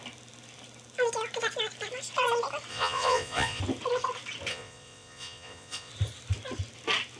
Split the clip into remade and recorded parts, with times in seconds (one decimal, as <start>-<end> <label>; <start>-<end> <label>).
0.0-2.7 recorded; 2.7-3.6 remade; 3.6-4.5 recorded; 4.5-5.9 remade; 5.9-7.2 recorded